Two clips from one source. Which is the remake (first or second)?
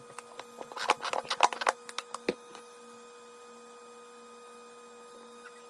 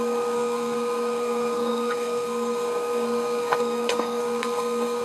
second